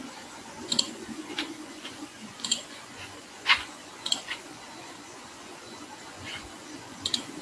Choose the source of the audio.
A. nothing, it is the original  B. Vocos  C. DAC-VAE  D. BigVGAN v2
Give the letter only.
B